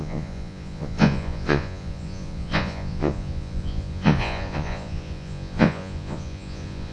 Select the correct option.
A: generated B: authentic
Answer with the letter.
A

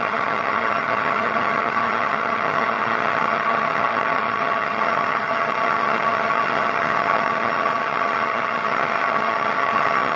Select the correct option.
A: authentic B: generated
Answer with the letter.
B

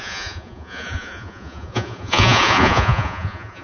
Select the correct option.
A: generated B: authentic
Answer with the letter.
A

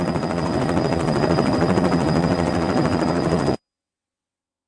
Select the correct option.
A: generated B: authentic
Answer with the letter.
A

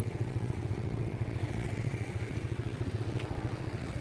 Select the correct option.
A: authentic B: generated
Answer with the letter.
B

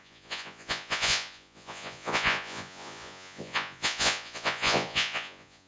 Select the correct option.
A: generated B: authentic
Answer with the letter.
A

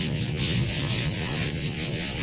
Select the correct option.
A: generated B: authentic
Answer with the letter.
A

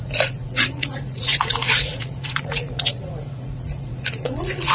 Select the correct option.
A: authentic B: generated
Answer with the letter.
B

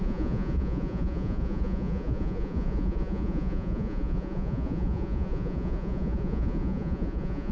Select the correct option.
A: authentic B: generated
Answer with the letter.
B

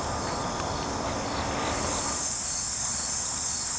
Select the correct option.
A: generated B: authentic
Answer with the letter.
B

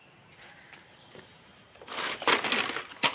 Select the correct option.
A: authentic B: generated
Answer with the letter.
A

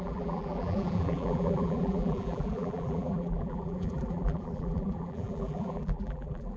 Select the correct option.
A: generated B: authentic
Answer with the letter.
A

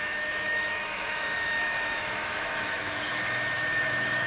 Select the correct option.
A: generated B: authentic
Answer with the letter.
A